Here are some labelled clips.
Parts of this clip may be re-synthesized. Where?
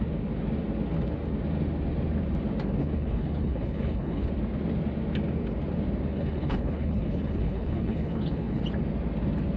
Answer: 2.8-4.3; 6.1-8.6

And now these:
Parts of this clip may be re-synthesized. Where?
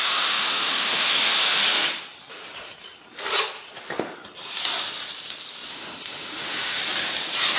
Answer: 0.0-1.6; 5.7-6.8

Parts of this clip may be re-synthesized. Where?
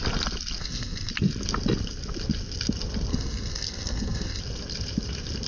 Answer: 0.6-1.1; 3.1-4.4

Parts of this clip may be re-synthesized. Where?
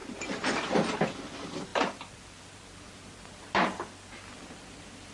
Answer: 0.0-1.0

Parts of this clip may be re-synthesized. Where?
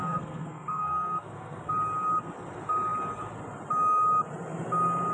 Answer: 0.0-1.7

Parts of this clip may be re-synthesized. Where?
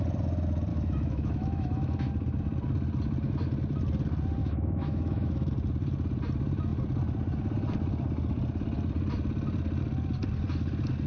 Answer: 0.7-2.1; 4.4-5.5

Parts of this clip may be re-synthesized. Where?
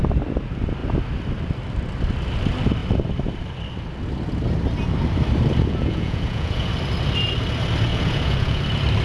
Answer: 5.6-6.7; 7.9-8.6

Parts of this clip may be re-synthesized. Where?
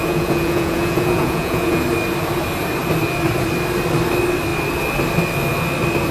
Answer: 0.0-1.8